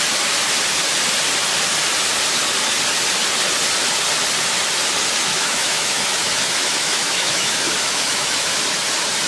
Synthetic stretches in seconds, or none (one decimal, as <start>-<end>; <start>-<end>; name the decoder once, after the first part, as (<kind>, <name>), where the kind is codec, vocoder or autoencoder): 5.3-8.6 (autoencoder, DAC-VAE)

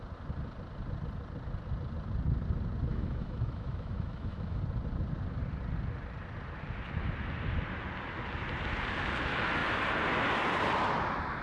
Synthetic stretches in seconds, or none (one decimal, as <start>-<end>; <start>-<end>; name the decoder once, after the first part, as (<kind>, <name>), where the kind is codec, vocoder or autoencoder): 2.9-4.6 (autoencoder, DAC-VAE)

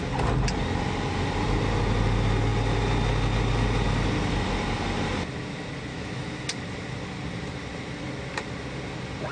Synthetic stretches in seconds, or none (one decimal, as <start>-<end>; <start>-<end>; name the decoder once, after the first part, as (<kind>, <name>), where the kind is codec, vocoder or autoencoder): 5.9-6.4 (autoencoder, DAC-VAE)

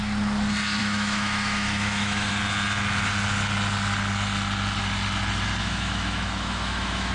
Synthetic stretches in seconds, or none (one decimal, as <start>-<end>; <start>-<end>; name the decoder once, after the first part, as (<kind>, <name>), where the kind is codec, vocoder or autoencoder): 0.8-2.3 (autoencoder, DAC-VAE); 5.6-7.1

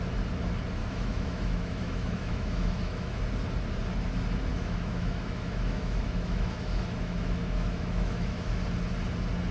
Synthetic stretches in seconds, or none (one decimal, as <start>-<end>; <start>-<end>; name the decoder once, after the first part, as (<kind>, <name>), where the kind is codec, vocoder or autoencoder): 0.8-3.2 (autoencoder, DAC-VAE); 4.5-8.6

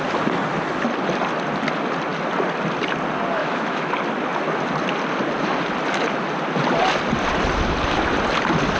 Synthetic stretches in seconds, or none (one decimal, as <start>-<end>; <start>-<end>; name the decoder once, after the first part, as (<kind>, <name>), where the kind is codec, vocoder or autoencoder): 3.4-3.9 (autoencoder, DAC-VAE)

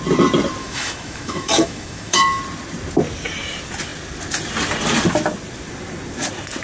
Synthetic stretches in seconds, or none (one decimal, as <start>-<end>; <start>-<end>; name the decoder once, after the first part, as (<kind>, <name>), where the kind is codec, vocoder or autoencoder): 0.6-2.4 (autoencoder, DAC-VAE)